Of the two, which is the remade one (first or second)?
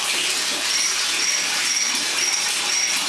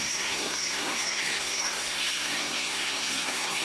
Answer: second